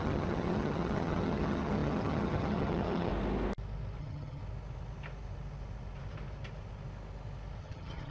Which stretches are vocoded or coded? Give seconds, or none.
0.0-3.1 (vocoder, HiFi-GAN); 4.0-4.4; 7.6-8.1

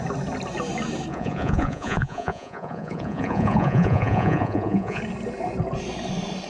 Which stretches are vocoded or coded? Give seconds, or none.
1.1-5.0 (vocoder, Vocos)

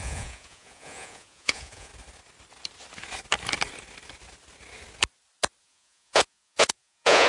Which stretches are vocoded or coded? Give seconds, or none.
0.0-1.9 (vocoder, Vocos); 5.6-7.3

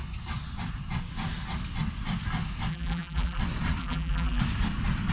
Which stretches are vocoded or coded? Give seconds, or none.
2.7-3.4 (vocoder, BigVGAN v2); 3.8-4.4